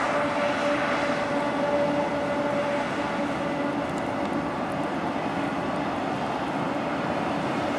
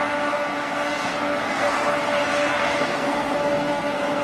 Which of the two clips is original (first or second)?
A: first